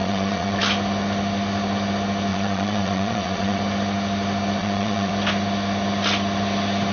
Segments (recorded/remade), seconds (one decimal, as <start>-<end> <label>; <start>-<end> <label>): 0.0-0.6 remade; 0.6-2.3 recorded; 2.3-3.6 remade; 3.6-4.6 recorded; 4.6-5.1 remade; 5.1-6.9 recorded